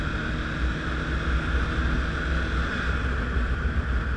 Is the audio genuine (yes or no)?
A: yes